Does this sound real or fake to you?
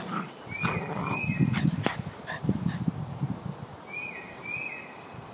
real